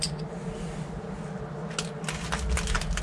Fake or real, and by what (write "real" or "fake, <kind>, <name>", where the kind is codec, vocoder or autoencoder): real